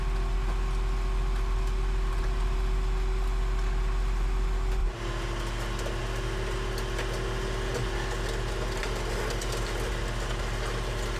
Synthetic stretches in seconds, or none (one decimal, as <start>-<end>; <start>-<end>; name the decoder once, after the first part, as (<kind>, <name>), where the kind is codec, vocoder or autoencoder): none